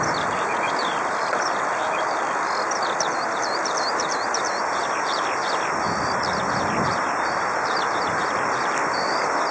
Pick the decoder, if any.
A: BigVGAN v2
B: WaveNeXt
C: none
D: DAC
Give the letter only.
C